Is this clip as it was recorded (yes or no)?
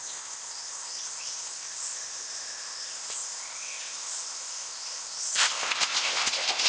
no